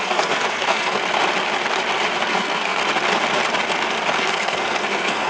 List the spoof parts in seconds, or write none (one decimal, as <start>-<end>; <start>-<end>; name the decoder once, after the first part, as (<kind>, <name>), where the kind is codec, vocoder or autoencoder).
0.0-1.0 (codec, SNAC); 2.2-2.8; 4.2-5.3

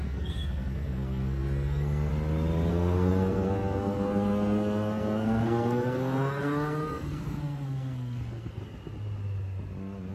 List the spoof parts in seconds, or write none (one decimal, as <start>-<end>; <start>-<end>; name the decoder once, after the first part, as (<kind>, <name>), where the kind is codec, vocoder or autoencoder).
0.0-2.1 (codec, SNAC); 2.7-8.6

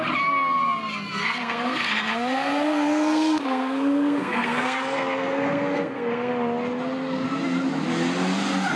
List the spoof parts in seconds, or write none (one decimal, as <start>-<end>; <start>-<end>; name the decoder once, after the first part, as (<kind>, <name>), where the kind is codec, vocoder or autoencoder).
1.2-6.3 (codec, SNAC)

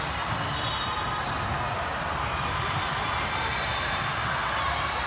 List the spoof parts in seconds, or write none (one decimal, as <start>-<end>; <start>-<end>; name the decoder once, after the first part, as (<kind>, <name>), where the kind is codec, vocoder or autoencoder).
none